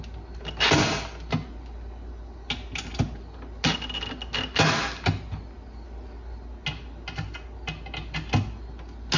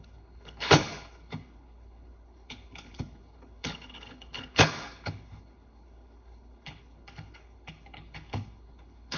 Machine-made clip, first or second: second